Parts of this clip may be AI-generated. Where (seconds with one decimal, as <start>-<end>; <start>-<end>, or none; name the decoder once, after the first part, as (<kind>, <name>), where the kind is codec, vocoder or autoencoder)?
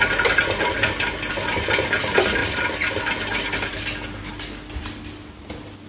none